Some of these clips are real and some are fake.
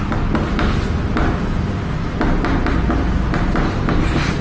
real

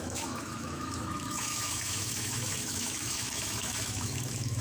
fake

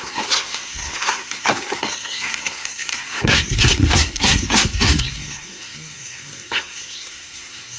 fake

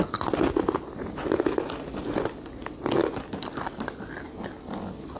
real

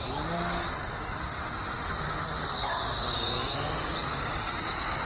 real